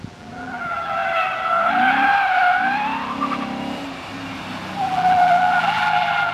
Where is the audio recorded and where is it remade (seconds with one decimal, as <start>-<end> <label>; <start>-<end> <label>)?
0.0-1.0 remade; 1.0-4.8 recorded; 4.8-6.3 remade